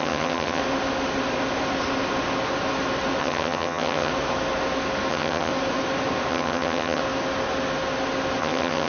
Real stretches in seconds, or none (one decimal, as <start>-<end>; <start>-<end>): 0.6-3.2; 4.1-5.1; 5.5-6.3; 7.0-8.4